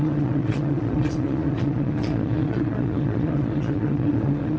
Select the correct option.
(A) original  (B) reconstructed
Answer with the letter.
B